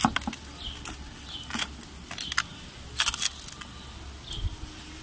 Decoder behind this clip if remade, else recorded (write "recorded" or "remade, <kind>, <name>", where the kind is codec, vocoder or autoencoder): recorded